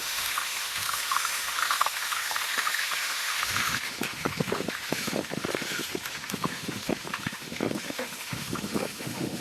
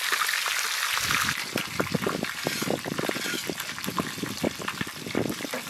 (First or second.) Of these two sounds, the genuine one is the second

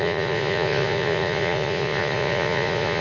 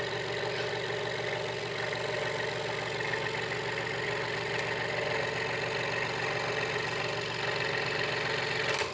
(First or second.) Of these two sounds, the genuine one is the second